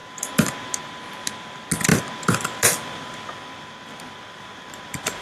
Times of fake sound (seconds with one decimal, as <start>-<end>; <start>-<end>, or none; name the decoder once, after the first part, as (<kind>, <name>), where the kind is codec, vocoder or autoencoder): 0.0-0.8 (vocoder, BigVGAN v2); 1.9-5.2

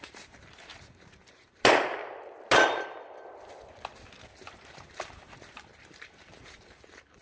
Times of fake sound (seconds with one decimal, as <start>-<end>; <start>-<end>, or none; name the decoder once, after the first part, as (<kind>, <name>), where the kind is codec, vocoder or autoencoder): 0.0-2.0 (vocoder, BigVGAN v2); 4.5-7.2

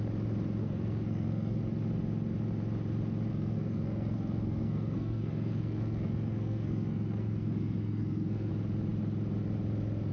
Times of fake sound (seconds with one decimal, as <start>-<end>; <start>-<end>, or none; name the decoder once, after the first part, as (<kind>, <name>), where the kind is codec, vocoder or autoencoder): 0.6-1.6 (codec, SNAC); 3.3-8.5